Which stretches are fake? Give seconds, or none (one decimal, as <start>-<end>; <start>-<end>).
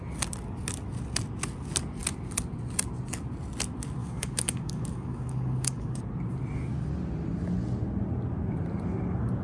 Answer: 4.0-6.0